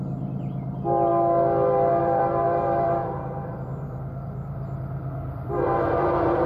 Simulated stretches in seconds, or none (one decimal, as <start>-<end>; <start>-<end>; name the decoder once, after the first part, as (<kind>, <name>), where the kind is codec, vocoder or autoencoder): 0.0-1.1 (vocoder, BigVGAN v2); 2.0-6.5